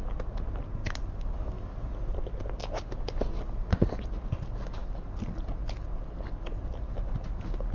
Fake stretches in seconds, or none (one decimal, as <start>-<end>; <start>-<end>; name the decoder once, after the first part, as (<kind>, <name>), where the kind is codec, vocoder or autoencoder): none

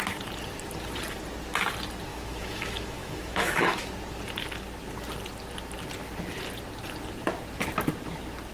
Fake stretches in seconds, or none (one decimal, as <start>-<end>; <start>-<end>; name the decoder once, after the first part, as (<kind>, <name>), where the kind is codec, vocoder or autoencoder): 2.1-3.9 (autoencoder, DAC-VAE)

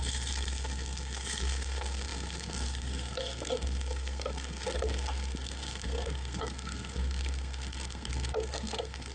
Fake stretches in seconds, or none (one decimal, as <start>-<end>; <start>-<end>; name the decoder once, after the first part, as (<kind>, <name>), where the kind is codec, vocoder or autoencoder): 0.0-9.1 (codec, SNAC)